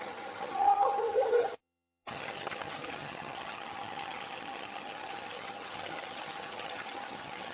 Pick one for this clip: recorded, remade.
remade